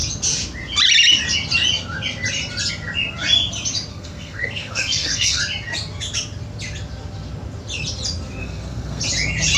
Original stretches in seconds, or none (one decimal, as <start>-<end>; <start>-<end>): 0.0-3.9; 5.4-8.4; 9.0-9.6